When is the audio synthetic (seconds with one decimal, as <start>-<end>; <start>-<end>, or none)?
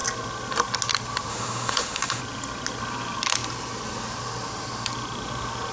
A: 1.3-2.2